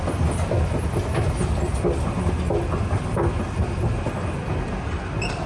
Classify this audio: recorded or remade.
recorded